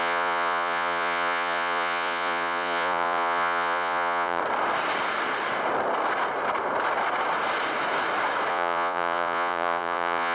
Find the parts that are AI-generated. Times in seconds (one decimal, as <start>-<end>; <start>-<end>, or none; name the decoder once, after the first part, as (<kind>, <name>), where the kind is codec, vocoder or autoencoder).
0.0-4.4 (vocoder, Vocos); 8.5-10.3